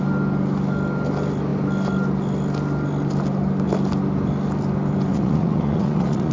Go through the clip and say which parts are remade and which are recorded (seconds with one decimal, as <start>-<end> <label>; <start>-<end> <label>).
0.0-5.1 recorded; 5.1-6.3 remade